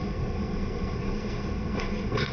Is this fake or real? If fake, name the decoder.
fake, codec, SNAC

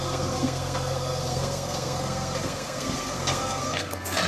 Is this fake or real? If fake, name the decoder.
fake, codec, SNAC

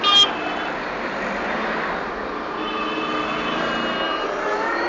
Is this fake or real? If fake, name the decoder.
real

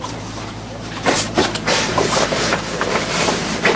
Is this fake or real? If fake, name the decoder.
fake, vocoder, BigVGAN v2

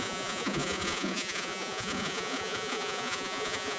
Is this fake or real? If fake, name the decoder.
fake, vocoder, Vocos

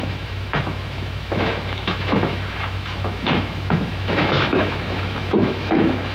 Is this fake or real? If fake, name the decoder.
fake, autoencoder, DAC-VAE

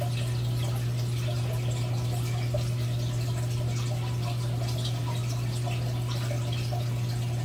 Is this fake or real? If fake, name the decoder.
real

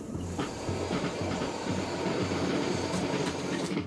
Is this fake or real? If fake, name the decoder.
fake, vocoder, BigVGAN v2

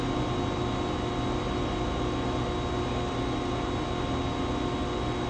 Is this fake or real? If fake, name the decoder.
real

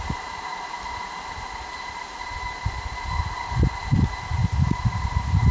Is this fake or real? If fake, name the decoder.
real